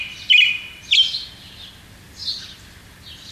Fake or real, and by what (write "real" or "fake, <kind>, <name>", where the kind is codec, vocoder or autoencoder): real